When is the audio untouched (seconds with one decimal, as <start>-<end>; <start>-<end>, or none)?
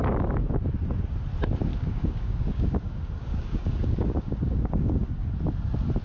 0.0-1.7; 5.3-6.0